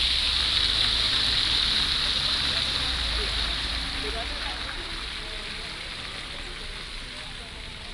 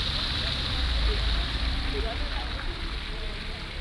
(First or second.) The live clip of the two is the first